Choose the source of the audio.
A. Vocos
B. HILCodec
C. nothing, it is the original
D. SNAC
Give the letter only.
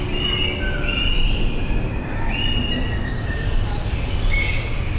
C